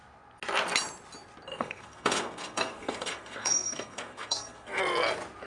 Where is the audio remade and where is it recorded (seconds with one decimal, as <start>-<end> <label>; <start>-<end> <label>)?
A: 0.0-1.5 recorded; 1.5-4.8 remade; 4.8-5.5 recorded